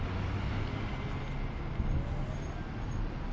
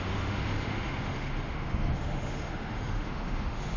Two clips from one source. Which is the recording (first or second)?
first